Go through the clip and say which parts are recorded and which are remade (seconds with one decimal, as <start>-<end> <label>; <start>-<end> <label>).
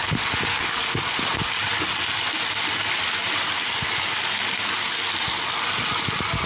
0.0-6.5 recorded